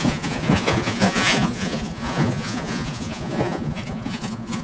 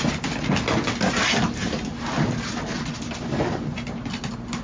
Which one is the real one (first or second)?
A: second